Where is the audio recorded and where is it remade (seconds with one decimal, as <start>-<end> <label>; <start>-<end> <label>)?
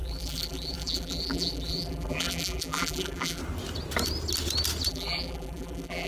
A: 0.0-3.4 remade; 3.4-4.9 recorded; 4.9-6.1 remade